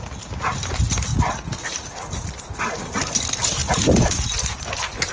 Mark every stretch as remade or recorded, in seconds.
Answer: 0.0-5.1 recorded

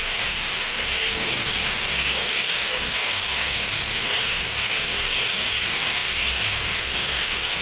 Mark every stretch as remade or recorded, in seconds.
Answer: 0.0-7.6 remade